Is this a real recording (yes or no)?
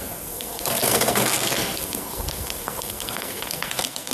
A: no